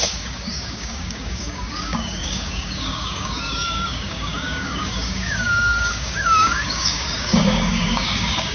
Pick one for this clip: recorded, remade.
remade